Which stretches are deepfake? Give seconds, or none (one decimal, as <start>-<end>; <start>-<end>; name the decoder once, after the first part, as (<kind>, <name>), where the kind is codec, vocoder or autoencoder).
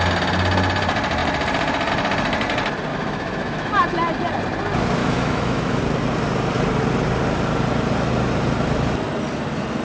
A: 2.9-3.7 (autoencoder, DAC-VAE); 5.0-5.8